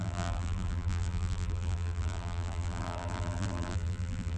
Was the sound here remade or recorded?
remade